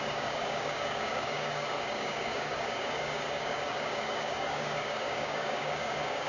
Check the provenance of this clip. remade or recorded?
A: remade